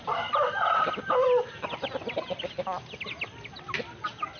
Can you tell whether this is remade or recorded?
recorded